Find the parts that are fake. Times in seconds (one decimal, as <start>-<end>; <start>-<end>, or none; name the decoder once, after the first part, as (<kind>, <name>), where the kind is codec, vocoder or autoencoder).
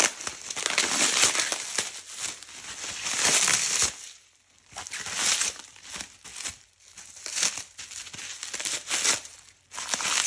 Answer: none